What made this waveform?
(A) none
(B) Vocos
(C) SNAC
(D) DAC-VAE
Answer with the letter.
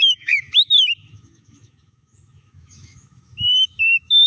D